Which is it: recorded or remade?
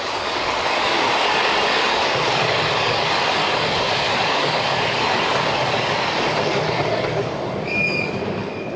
remade